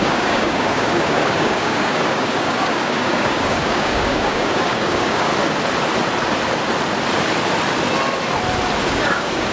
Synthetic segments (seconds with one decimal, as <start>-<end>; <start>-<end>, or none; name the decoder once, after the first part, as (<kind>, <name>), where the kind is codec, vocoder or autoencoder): 0.0-5.3 (codec, DAC); 8.9-9.5